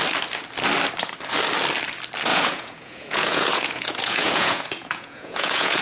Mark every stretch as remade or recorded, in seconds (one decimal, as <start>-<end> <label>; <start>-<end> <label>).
0.0-2.3 recorded; 2.3-5.8 remade